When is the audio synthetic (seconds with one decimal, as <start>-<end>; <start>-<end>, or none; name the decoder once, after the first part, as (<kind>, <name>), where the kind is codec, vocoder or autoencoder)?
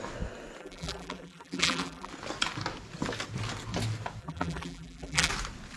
0.6-2.1 (vocoder, BigVGAN v2); 4.2-5.3